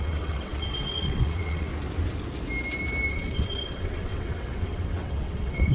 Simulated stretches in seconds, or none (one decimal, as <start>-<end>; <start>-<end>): 0.0-1.7; 3.1-5.7